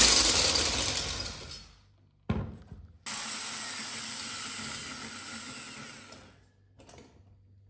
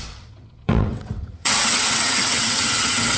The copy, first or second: second